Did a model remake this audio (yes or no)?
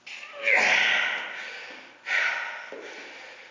no